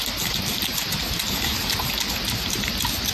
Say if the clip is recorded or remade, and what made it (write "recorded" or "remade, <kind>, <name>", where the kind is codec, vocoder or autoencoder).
recorded